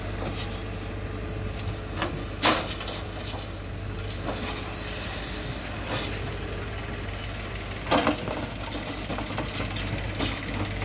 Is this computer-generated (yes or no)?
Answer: no